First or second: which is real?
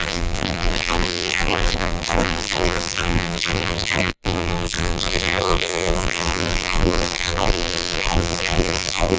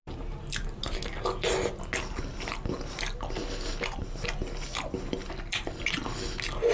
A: second